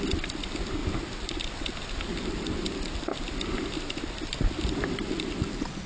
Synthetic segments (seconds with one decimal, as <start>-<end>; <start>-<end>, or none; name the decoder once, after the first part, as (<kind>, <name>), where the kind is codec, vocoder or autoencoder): none

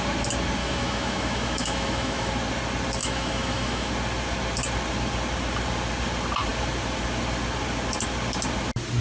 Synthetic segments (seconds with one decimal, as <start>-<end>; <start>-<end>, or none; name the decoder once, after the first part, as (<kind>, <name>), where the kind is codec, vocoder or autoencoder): 0.6-2.3 (autoencoder, DAC-VAE); 3.0-3.9

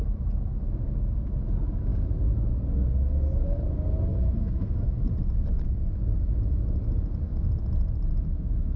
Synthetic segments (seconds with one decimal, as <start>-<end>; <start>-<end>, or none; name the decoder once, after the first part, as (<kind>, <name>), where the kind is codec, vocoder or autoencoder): 4.1-5.0 (autoencoder, DAC-VAE)

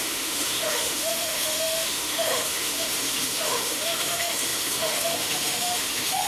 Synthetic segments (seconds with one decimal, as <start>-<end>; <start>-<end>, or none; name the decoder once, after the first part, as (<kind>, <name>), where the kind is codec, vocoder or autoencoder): 0.0-6.3 (autoencoder, DAC-VAE)